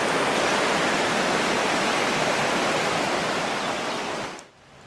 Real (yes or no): yes